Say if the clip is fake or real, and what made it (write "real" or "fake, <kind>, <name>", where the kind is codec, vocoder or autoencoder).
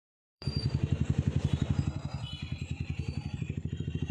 fake, vocoder, BigVGAN v2